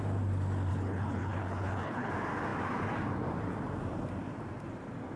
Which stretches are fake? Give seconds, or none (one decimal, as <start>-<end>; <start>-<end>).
0.7-2.1